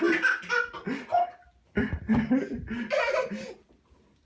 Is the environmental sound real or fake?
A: real